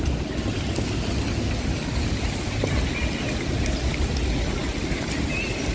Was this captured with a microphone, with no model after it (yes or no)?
yes